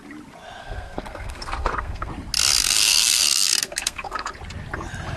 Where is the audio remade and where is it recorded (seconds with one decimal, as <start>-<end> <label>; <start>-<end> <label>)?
0.0-0.6 recorded; 0.6-2.1 remade; 2.1-2.6 recorded; 2.6-4.3 remade; 4.3-5.2 recorded